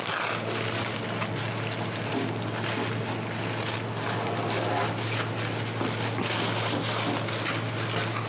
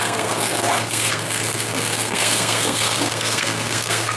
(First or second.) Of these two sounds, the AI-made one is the second